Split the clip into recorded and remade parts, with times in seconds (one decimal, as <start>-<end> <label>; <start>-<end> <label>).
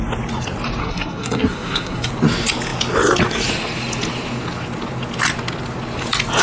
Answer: 0.0-0.8 recorded; 0.8-2.1 remade; 2.1-6.4 recorded